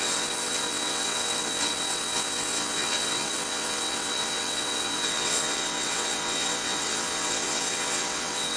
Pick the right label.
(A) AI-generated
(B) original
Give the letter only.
A